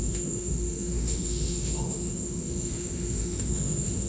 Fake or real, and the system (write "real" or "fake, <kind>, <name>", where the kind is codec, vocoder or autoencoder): fake, autoencoder, DAC-VAE